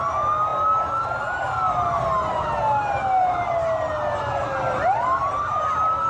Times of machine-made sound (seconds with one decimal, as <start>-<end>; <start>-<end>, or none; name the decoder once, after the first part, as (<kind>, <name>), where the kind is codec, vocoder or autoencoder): none